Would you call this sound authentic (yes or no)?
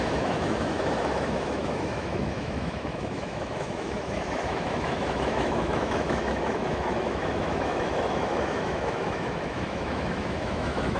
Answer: no